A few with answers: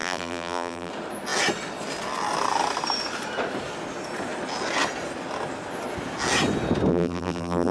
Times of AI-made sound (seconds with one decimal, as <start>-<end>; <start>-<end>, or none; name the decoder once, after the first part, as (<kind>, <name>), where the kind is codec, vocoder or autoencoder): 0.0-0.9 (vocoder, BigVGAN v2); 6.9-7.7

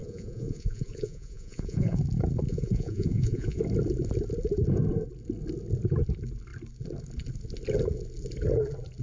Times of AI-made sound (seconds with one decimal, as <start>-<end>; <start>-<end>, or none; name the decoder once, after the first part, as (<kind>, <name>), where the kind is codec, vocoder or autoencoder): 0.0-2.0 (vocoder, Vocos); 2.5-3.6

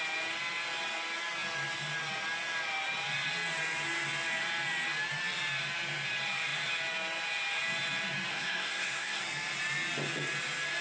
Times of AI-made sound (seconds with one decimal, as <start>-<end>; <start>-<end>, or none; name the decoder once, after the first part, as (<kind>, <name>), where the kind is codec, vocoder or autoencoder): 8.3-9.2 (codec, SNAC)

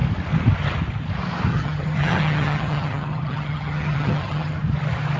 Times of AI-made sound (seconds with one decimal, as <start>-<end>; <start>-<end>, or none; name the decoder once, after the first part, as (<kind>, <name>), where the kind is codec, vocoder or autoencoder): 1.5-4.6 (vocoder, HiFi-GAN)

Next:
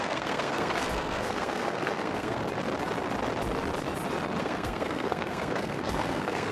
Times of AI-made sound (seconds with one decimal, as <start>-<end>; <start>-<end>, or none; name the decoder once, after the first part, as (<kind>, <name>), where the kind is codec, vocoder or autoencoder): 0.0-2.4 (codec, SNAC); 4.4-6.5

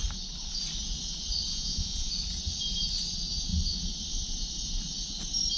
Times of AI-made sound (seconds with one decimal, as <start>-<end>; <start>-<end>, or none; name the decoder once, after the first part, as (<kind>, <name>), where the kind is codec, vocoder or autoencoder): 1.5-2.1 (vocoder, Vocos)